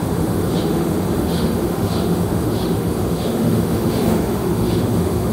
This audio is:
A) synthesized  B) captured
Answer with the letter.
A